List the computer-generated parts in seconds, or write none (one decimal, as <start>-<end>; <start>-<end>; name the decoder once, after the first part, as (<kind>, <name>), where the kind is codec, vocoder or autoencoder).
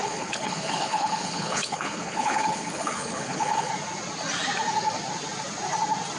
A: 0.0-3.7 (codec, HILCodec)